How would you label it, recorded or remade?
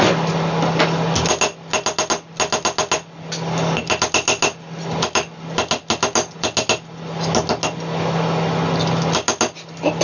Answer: recorded